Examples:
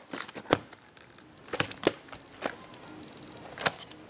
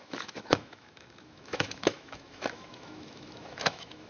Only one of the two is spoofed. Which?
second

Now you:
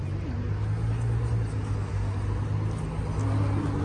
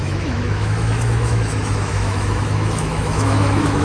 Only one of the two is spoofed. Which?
second